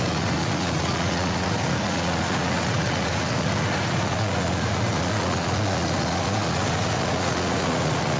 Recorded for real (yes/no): no